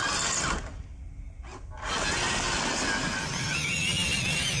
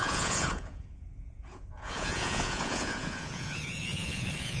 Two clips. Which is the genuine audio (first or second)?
first